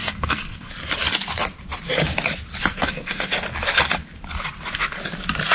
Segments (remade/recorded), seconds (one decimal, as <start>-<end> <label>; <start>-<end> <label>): 0.0-0.7 remade; 0.7-2.6 recorded; 2.6-3.3 remade; 3.3-5.5 recorded